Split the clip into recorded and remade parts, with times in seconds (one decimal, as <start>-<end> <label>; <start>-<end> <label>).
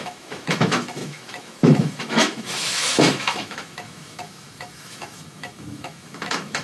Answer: 0.0-6.6 remade